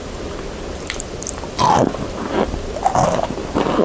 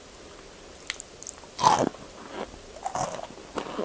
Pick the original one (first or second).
second